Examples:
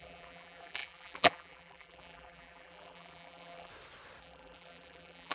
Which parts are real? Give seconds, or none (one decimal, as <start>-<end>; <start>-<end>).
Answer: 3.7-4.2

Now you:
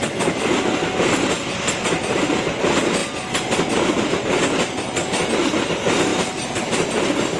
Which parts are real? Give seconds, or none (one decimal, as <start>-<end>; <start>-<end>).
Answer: 0.0-6.1

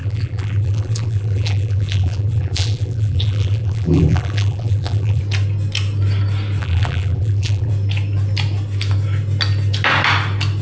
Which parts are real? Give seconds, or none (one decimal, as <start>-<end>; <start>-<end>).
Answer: 5.2-6.6; 7.7-10.6

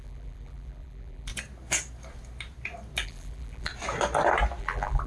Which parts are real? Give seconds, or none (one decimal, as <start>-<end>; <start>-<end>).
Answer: 1.3-3.0; 3.7-4.6